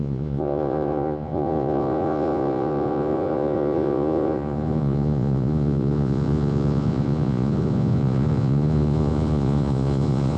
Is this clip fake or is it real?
fake